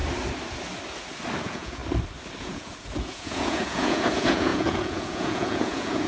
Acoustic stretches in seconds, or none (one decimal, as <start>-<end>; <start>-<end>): 0.0-1.4; 1.8-2.4